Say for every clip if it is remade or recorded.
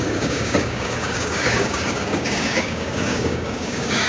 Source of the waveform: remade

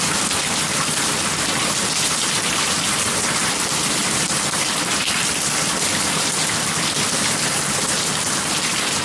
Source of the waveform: recorded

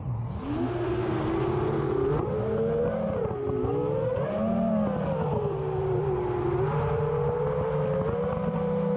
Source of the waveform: recorded